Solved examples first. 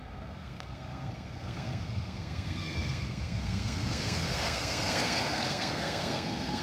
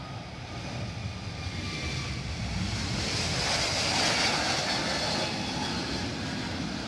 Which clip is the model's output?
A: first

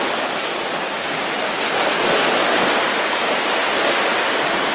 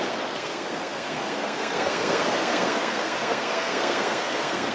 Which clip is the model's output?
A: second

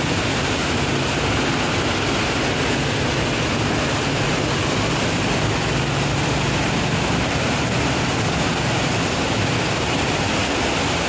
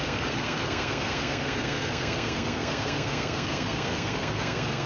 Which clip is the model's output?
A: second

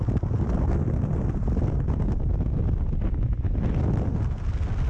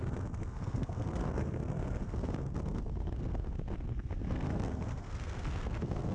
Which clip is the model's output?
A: second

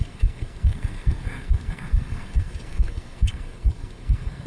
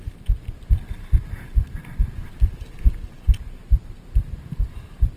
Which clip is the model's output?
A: first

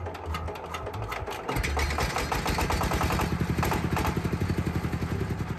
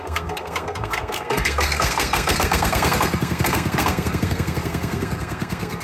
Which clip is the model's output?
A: second